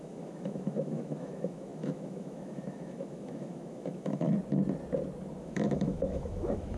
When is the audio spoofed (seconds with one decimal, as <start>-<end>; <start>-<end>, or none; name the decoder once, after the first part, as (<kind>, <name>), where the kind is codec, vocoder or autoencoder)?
0.0-4.3 (autoencoder, DAC-VAE); 5.4-6.8